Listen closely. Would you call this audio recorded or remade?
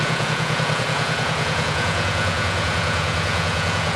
remade